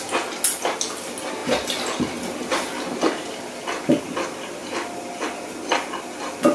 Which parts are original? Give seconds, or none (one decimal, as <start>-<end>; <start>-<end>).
0.0-6.5